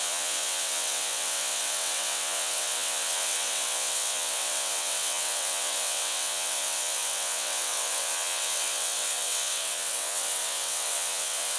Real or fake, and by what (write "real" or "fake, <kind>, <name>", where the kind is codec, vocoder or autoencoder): fake, vocoder, WaveNeXt